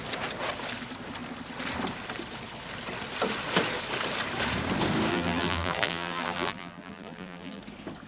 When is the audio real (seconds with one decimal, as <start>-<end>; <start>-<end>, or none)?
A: 0.0-5.1; 7.6-8.1